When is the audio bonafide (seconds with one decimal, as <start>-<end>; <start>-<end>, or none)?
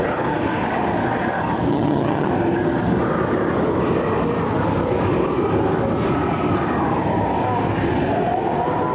0.0-1.7; 2.3-8.9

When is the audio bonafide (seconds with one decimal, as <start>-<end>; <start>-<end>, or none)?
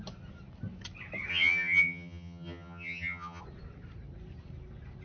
0.0-1.3; 3.4-5.0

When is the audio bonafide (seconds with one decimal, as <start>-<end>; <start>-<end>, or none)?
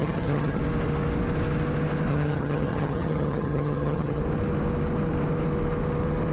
0.6-2.1; 4.2-6.3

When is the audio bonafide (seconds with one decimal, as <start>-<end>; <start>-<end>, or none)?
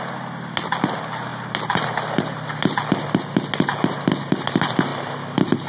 0.0-5.7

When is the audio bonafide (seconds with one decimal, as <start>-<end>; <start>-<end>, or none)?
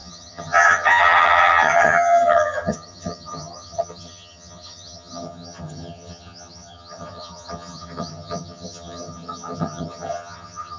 none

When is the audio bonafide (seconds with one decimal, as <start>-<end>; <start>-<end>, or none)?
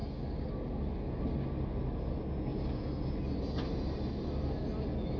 0.0-5.2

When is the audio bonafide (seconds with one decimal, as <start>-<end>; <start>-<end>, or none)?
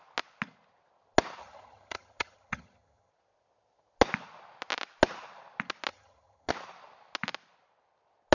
0.0-1.4; 3.1-5.9; 6.5-8.3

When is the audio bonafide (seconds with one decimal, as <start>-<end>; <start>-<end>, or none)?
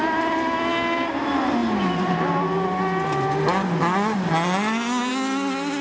0.0-5.8